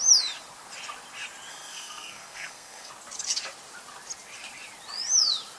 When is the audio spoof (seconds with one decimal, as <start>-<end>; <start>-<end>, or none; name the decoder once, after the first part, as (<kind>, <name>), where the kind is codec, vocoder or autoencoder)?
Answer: 1.5-2.9 (codec, SNAC)